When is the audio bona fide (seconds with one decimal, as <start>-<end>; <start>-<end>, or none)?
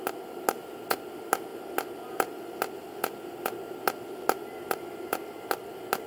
0.0-6.1